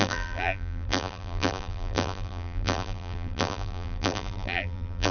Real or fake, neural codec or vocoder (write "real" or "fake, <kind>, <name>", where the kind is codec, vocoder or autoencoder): fake, vocoder, BigVGAN v2